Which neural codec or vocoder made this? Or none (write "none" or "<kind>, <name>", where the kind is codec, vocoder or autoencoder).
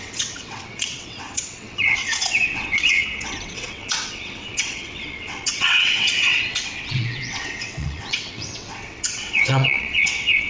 vocoder, WaveNeXt